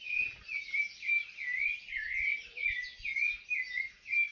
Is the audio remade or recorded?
recorded